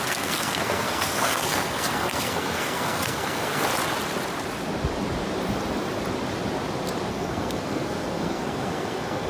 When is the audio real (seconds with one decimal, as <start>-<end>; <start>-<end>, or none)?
3.7-7.1